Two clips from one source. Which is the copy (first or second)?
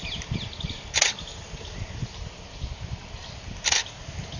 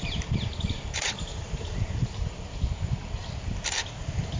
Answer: second